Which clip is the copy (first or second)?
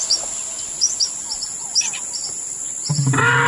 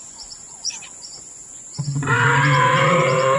second